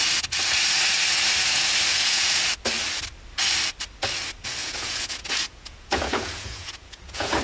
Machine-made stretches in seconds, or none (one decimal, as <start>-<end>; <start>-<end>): 1.9-2.4; 4.6-7.4